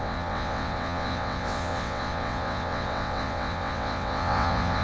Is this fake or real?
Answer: fake